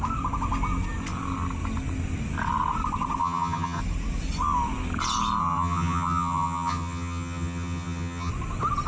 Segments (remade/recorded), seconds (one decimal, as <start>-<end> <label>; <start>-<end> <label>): 0.0-3.2 recorded; 3.2-3.8 remade; 3.8-5.4 recorded; 5.4-8.3 remade; 8.3-8.9 recorded